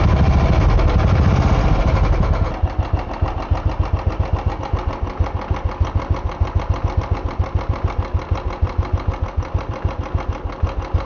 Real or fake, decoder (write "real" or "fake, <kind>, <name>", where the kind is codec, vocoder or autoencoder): real